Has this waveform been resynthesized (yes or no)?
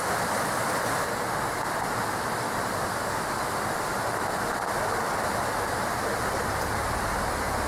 no